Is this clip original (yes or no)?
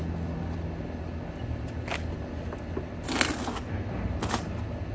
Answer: yes